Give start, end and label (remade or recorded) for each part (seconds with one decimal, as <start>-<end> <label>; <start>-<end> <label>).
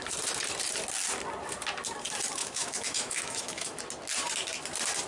0.0-2.4 recorded; 2.4-3.8 remade; 3.8-5.1 recorded